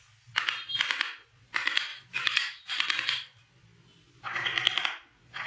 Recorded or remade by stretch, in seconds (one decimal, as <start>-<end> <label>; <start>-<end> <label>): 0.0-1.9 recorded; 1.9-2.7 remade; 2.7-5.5 recorded